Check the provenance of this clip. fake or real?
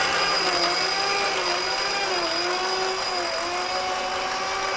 real